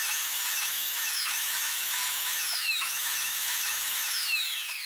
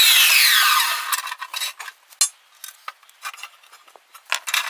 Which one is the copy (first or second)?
first